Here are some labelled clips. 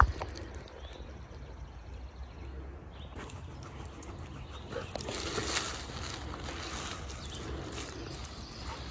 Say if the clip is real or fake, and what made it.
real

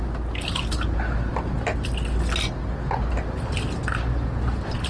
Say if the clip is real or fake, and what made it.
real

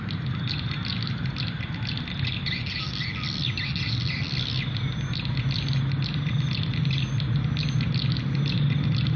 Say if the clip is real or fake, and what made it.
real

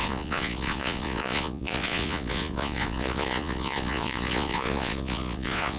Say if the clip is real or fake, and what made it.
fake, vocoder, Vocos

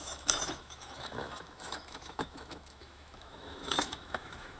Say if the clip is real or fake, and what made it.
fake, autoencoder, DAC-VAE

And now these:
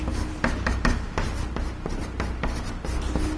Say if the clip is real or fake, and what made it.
real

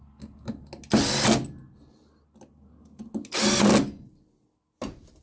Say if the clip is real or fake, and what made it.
real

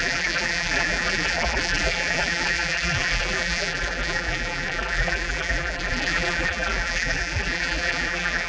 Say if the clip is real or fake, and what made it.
fake, vocoder, BigVGAN v2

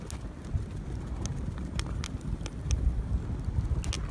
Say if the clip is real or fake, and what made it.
real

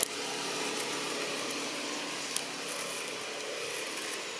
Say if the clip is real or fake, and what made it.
real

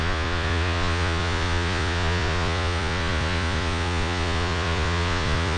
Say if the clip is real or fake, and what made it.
fake, vocoder, Vocos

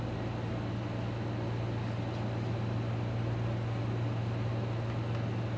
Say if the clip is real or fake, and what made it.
real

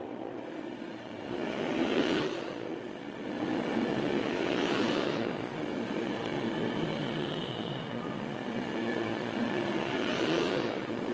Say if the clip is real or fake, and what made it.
fake, vocoder, Vocos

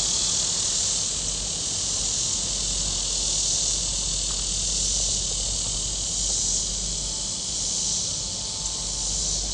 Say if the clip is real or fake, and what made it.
real